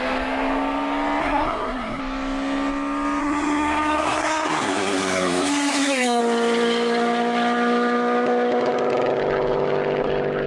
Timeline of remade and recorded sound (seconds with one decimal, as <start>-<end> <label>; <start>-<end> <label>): 0.0-1.2 recorded; 1.2-2.0 remade; 2.0-3.2 recorded; 3.2-6.2 remade; 6.2-10.5 recorded